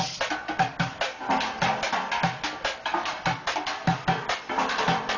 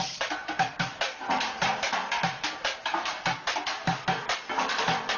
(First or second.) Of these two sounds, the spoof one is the second